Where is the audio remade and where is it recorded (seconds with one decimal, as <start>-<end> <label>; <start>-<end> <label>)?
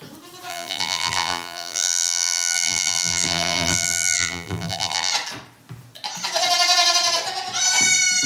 0.0-0.5 recorded; 0.5-5.1 remade; 5.1-8.3 recorded